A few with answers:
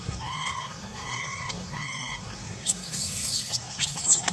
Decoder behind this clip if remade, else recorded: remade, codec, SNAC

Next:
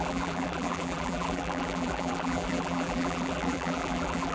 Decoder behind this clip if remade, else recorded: remade, vocoder, BigVGAN v2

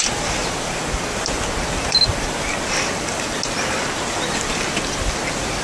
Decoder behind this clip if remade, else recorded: recorded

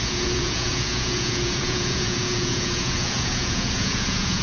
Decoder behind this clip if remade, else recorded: remade, vocoder, Vocos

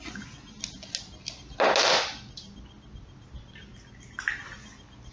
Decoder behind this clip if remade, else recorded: recorded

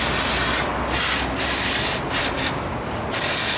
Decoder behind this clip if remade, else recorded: recorded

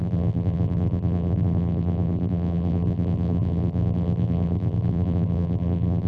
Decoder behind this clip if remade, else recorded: remade, vocoder, BigVGAN v2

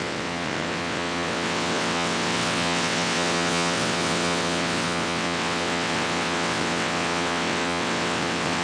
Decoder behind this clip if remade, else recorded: remade, vocoder, WaveNeXt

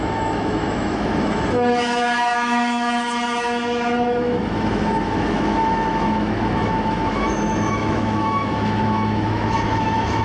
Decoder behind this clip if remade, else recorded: remade, autoencoder, DAC-VAE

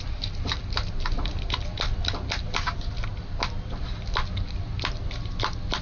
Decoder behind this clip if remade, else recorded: recorded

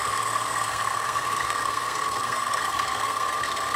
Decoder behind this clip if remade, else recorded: remade, codec, SNAC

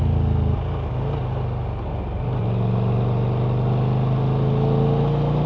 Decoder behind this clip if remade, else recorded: recorded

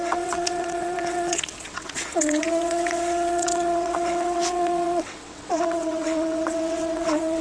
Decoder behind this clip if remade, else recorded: remade, vocoder, WaveNeXt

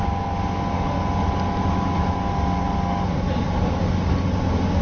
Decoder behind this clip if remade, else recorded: recorded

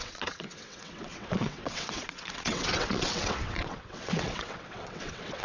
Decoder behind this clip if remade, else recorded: remade, vocoder, WaveNeXt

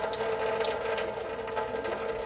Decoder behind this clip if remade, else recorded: recorded